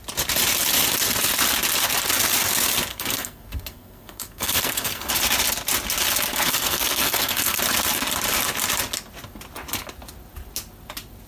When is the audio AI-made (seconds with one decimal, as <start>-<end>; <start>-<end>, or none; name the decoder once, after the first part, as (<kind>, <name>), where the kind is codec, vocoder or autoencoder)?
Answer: 2.9-5.1 (codec, SNAC); 6.3-7.6